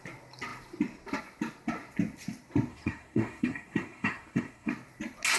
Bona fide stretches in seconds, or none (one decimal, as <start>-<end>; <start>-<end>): 0.0-2.7; 4.7-5.4